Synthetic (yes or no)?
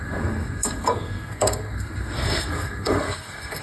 yes